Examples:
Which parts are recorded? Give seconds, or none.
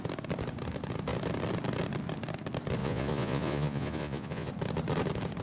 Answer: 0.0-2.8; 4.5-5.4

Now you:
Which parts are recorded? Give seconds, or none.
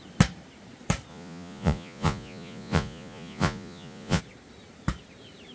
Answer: 0.0-1.1; 4.2-5.5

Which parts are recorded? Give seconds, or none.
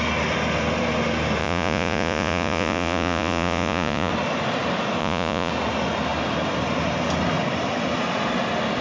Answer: 0.0-1.4; 4.1-5.0; 5.5-8.8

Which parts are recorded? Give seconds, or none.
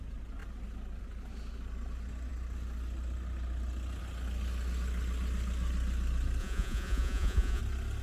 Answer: 0.0-6.4; 7.6-8.0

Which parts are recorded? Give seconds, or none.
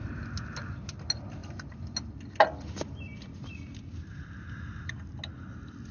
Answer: 0.0-5.9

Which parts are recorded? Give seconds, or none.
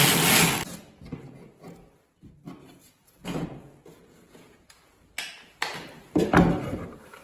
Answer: 0.0-2.6; 4.9-7.2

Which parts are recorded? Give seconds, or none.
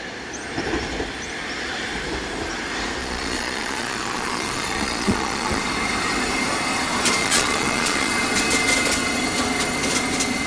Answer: 0.0-3.0; 5.6-7.2; 8.1-10.5